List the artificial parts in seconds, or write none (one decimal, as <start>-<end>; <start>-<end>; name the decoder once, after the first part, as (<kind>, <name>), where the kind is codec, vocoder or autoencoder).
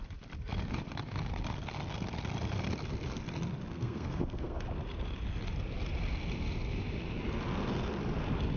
3.7-4.6 (codec, SNAC)